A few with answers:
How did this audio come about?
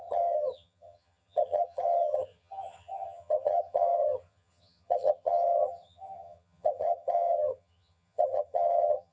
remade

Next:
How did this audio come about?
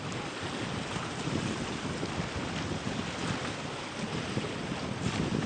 recorded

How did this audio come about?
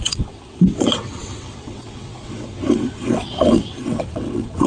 remade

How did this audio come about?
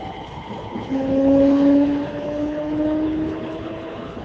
remade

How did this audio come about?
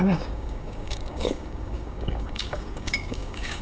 remade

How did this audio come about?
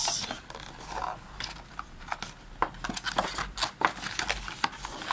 recorded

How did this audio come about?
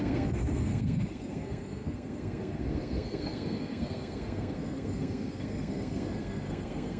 remade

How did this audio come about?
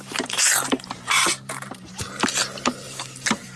remade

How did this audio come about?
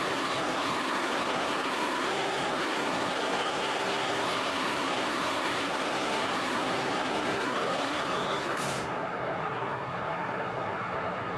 remade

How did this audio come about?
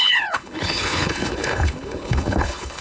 remade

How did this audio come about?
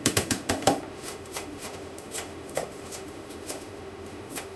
remade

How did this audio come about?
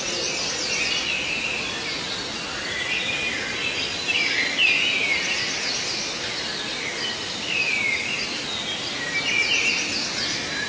recorded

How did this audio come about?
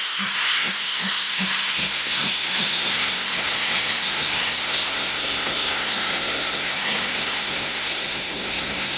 remade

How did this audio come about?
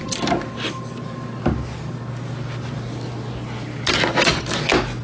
recorded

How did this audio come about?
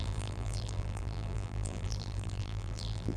remade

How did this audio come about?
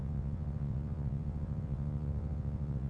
remade